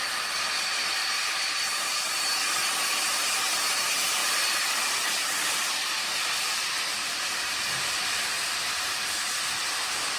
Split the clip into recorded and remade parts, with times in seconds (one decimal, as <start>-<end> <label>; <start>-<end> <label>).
0.0-4.2 recorded; 4.2-5.7 remade; 5.7-7.0 recorded; 7.0-8.5 remade; 8.5-10.2 recorded